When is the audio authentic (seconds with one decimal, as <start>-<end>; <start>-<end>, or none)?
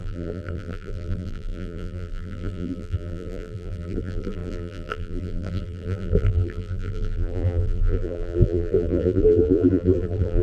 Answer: none